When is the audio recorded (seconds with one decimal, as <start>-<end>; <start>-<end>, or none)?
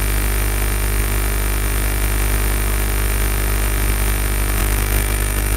0.0-4.6